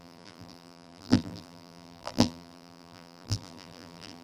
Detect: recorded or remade remade